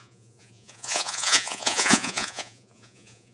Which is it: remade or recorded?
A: remade